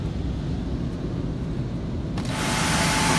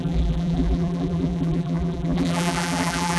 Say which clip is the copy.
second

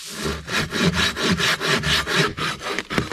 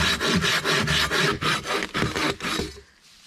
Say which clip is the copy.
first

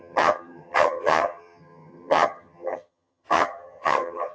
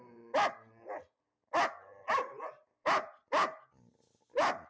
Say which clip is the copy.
first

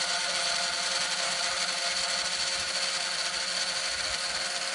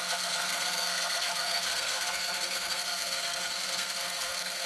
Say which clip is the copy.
second